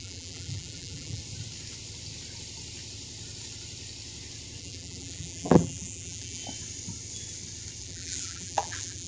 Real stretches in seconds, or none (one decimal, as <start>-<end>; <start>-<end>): 1.2-4.6; 6.4-7.8